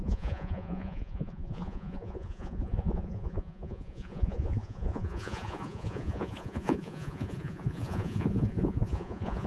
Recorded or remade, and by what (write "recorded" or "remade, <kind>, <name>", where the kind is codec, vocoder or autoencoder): remade, vocoder, Vocos